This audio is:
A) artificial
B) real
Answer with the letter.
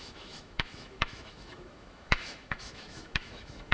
A